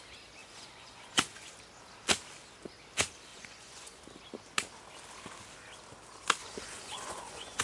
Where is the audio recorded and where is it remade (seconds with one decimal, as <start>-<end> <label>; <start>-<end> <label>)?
0.0-0.4 recorded; 0.4-1.5 remade; 1.5-3.3 recorded; 3.3-4.0 remade; 4.0-6.4 recorded; 6.4-7.6 remade